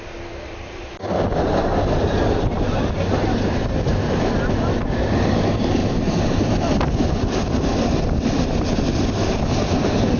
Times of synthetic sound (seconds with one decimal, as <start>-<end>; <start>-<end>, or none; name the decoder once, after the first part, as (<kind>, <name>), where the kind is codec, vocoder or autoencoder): 5.8-6.5 (vocoder, BigVGAN v2)